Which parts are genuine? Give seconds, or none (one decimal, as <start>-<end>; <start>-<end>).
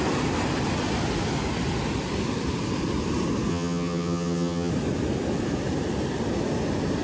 0.0-3.5; 4.7-7.0